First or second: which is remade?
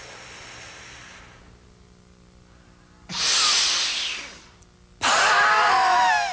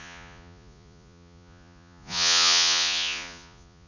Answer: second